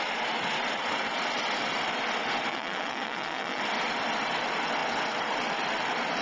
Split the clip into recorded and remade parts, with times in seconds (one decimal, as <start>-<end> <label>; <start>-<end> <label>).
0.0-2.5 recorded; 2.5-3.6 remade; 3.6-6.2 recorded